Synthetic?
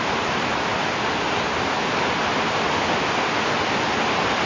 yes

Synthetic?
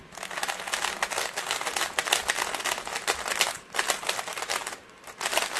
no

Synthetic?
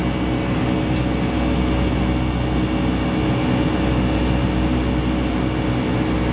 no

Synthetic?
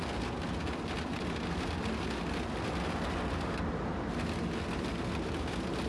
no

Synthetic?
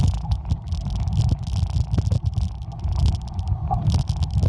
no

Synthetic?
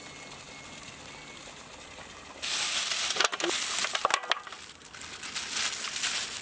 no